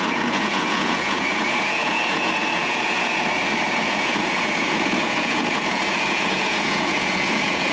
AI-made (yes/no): yes